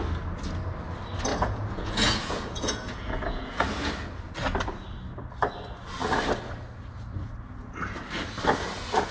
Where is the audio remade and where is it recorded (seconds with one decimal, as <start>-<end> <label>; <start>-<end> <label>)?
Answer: 0.0-1.3 recorded; 1.3-3.9 remade; 3.9-9.1 recorded